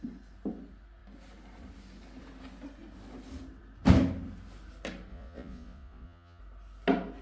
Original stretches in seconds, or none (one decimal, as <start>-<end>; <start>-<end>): 0.0-5.1; 6.4-7.2